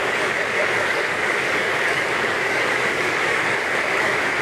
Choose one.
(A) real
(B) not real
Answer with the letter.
B